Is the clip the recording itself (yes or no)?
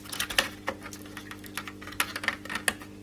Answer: yes